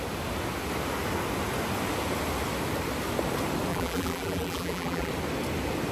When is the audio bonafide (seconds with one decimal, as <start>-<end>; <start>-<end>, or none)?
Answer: 0.0-3.7; 5.1-5.9